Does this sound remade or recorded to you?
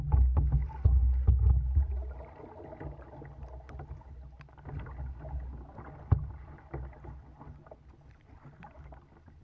recorded